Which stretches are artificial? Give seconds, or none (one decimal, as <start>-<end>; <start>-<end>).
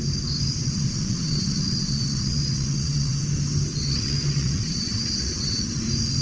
0.6-3.2; 3.7-5.8